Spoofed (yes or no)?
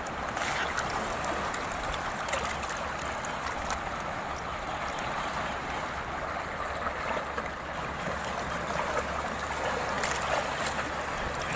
no